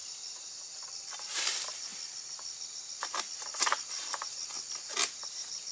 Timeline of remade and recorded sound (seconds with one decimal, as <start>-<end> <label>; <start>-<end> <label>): 0.0-0.9 recorded; 0.9-1.9 remade; 1.9-5.3 recorded; 5.3-5.7 remade